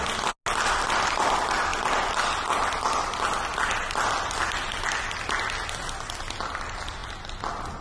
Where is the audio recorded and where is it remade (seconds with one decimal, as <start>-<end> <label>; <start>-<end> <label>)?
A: 0.0-7.8 recorded